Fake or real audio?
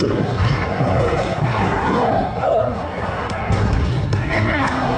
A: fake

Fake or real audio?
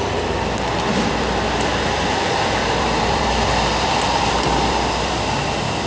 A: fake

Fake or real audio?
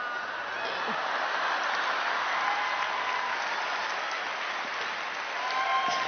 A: real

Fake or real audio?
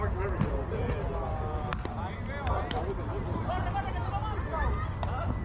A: real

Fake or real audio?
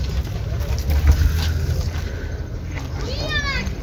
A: real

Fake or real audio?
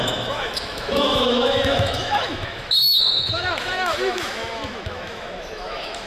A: fake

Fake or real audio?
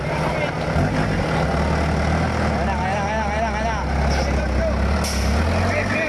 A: real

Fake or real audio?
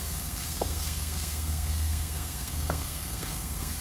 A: fake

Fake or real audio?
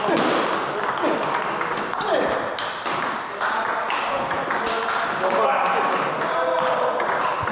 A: real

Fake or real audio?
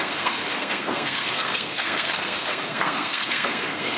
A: fake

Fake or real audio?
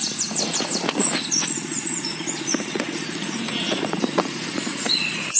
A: fake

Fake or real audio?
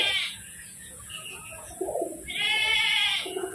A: fake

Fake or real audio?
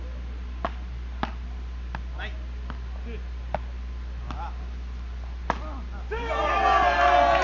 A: real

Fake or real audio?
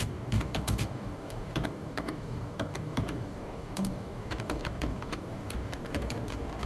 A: fake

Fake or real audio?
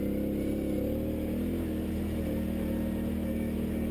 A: real